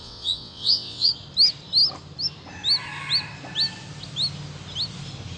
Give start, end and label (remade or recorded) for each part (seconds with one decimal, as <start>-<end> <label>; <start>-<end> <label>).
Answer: 0.0-1.1 remade; 1.1-5.4 recorded